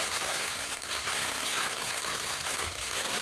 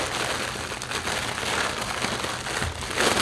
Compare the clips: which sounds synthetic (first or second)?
first